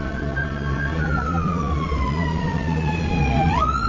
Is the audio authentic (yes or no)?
no